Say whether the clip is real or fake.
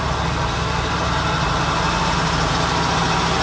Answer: real